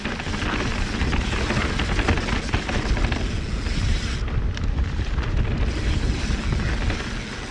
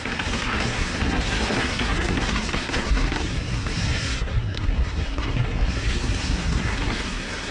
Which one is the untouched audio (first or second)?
first